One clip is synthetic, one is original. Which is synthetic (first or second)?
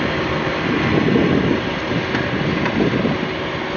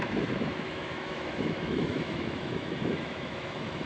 second